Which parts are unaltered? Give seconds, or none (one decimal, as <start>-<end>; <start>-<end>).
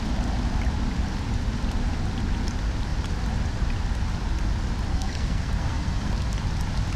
0.0-4.9; 6.1-7.0